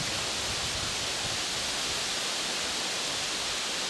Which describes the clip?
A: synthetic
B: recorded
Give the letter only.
B